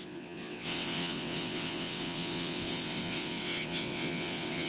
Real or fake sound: fake